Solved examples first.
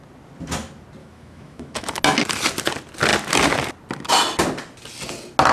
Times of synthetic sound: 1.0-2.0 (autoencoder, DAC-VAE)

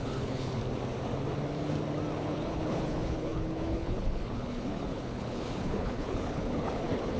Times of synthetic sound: 0.0-0.6 (codec, HILCodec); 2.2-7.2

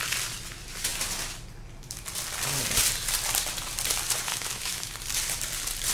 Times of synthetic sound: 4.3-4.9 (autoencoder, DAC-VAE)

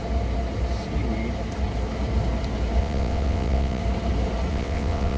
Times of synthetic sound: 2.8-3.8 (vocoder, WaveNeXt); 4.5-5.2